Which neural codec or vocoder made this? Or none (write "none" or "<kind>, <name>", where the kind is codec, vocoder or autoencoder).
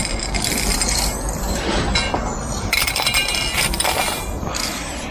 none